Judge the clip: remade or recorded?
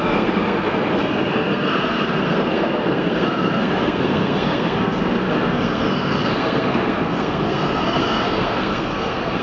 remade